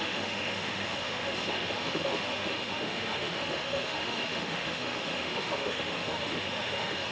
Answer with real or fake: fake